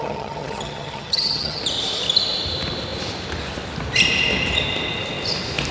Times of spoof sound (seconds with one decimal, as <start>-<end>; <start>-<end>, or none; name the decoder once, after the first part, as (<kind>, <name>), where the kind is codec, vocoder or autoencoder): 0.0-1.6 (vocoder, HiFi-GAN)